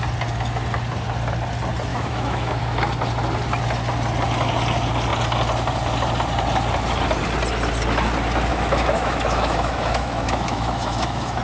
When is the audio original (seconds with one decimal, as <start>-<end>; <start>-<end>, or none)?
0.0-1.9; 2.6-8.5